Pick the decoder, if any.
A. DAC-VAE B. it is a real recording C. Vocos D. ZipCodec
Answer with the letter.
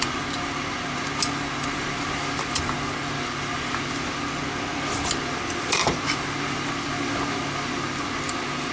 B